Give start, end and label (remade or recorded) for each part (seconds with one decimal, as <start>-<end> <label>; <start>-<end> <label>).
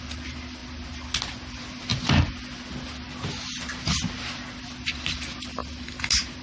0.0-6.4 recorded